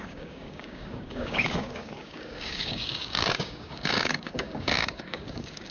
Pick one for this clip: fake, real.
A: fake